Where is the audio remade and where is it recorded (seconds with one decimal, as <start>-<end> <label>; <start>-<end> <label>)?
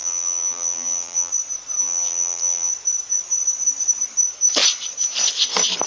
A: 0.0-1.3 remade; 1.3-1.8 recorded; 1.8-2.7 remade; 2.7-5.9 recorded